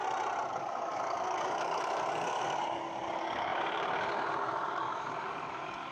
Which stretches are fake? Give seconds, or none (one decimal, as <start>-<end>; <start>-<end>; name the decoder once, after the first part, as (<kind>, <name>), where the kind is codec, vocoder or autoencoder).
0.5-5.9 (codec, DAC)